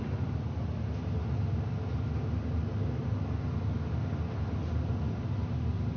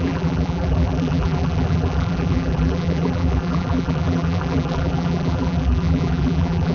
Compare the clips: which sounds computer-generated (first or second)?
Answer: second